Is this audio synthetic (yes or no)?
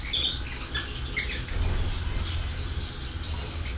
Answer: no